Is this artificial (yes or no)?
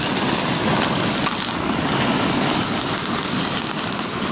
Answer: no